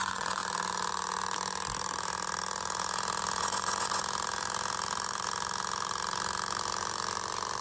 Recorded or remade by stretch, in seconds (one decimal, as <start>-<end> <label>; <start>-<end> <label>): 0.0-0.4 remade; 0.4-3.4 recorded; 3.4-4.0 remade; 4.0-7.6 recorded